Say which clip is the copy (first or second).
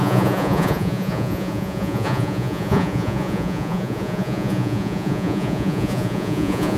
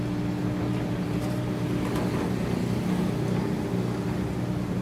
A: first